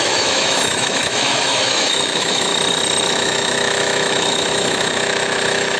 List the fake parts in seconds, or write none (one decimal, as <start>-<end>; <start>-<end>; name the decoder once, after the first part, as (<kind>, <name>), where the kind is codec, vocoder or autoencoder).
0.0-2.5 (autoencoder, DAC-VAE); 3.1-5.8